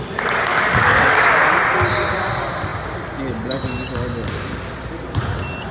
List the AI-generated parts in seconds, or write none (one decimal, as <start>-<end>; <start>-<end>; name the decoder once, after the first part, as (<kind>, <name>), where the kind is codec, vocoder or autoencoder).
0.5-1.3 (codec, DAC)